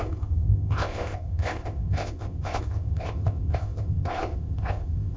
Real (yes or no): no